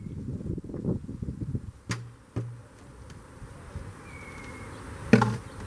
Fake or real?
real